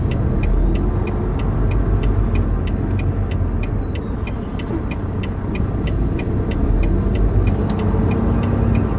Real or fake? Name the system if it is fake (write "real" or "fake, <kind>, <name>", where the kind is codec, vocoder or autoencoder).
real